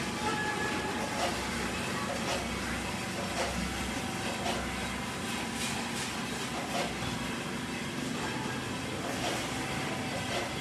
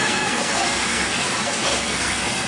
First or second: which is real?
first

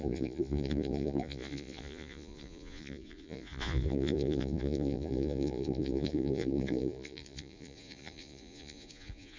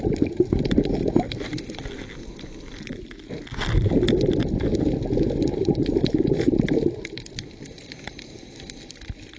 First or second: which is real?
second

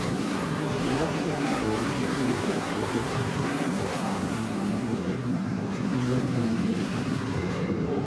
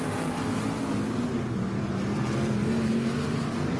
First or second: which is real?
second